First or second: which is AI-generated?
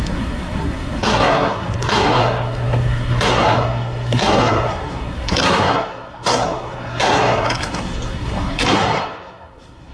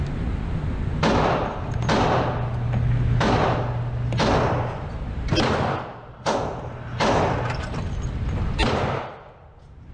first